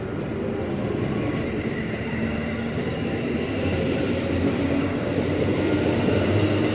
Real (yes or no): yes